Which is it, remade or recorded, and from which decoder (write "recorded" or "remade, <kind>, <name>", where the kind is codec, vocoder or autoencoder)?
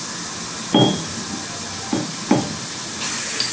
recorded